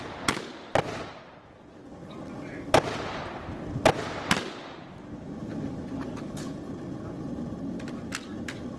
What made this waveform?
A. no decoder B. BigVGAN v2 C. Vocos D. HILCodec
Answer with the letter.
A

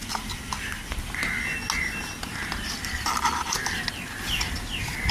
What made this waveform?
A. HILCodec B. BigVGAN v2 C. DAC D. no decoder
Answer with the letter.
D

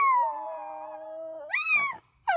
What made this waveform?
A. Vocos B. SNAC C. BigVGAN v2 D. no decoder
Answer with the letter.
D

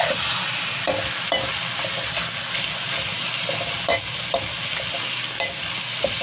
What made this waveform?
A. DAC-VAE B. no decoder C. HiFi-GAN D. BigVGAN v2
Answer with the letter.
B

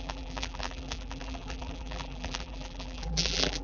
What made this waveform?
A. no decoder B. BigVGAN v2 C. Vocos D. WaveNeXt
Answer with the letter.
B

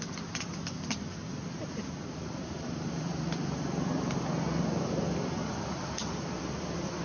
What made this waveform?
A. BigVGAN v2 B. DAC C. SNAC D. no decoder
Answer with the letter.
A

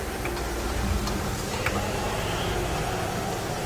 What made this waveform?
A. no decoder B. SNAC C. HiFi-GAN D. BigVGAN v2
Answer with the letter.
A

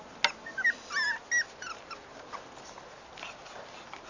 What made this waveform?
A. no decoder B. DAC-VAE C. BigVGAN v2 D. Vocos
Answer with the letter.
A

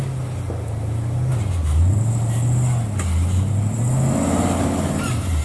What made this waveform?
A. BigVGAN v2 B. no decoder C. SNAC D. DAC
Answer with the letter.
B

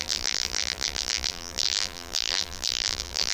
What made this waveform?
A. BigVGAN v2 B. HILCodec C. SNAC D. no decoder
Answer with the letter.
A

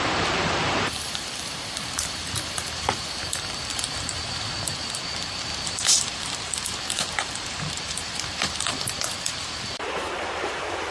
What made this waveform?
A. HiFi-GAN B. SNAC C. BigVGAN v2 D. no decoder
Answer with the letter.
C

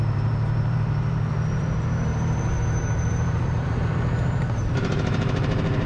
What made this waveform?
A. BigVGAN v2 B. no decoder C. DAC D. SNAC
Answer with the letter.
A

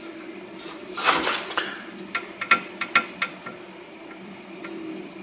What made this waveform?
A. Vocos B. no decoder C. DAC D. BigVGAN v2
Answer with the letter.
D